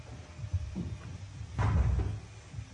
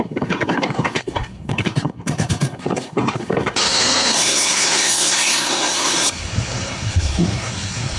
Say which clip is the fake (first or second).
second